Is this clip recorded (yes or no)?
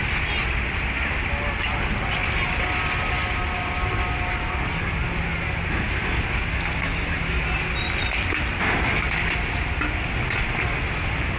yes